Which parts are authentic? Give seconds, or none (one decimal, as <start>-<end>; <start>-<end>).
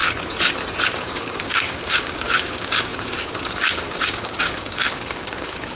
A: 0.0-0.9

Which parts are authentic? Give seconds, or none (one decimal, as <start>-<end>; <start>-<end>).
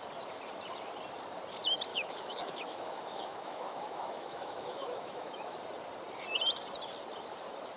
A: 0.0-1.9; 5.6-7.8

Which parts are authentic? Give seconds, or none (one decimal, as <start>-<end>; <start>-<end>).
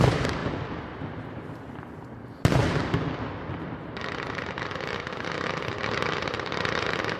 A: 0.0-7.2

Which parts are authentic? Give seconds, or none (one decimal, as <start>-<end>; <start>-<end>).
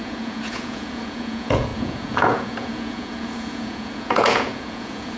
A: none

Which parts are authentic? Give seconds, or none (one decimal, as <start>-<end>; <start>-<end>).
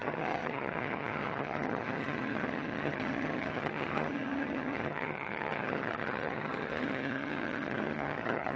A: none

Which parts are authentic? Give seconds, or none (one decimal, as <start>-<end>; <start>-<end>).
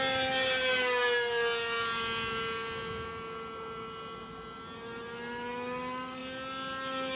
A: 0.0-7.2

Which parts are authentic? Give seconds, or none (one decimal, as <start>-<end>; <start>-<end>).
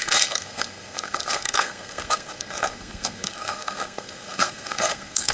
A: none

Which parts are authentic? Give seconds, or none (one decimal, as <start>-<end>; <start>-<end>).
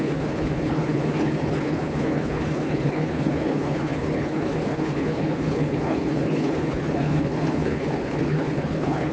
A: none